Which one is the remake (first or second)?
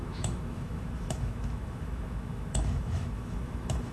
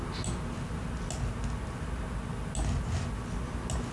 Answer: first